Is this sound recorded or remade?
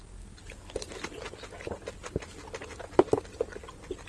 recorded